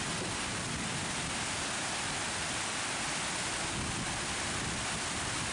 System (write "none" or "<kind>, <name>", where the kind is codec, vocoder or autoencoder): none